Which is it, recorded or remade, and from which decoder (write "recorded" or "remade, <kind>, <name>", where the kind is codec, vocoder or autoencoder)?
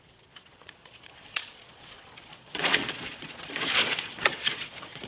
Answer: remade, vocoder, Vocos